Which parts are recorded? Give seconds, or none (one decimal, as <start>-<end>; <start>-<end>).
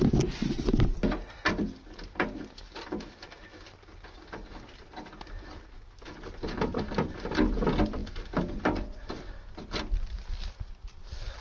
0.0-11.4